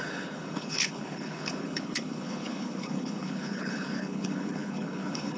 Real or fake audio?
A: fake